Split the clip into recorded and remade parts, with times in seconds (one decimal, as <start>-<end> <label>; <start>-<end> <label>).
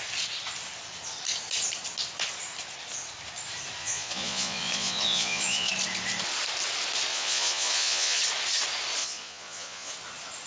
0.0-3.8 recorded; 3.8-5.7 remade; 5.7-7.1 recorded; 7.1-8.2 remade; 8.2-9.0 recorded; 9.0-9.9 remade; 9.9-10.5 recorded